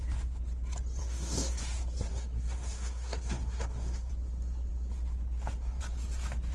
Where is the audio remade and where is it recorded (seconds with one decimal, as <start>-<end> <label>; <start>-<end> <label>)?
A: 0.0-1.0 recorded; 1.0-1.6 remade; 1.6-2.1 recorded; 2.1-4.1 remade; 4.1-6.5 recorded